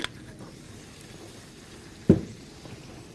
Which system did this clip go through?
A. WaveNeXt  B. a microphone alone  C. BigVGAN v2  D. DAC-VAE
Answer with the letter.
B